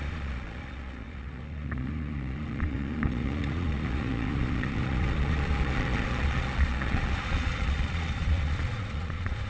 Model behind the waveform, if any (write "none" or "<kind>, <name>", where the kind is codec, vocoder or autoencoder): vocoder, Vocos